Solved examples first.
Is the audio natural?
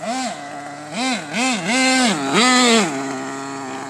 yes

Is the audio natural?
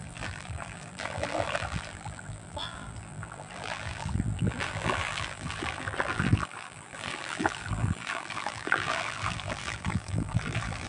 no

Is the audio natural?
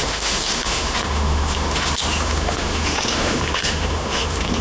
no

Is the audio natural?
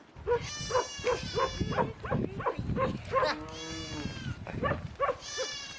yes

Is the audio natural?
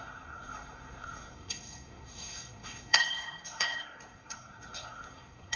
no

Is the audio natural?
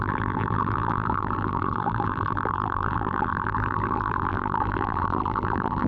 no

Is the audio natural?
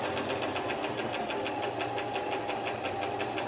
yes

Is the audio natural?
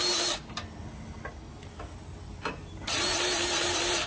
yes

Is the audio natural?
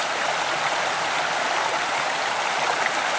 yes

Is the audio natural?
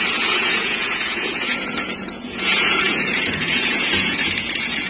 no